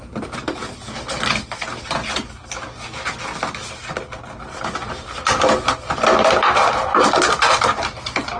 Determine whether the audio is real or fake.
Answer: real